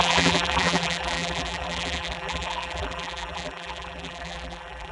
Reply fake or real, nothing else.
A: fake